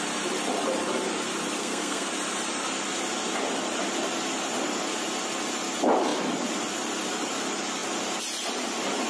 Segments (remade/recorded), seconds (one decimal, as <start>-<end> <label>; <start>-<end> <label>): 0.0-1.6 recorded; 1.6-2.1 remade; 2.1-9.1 recorded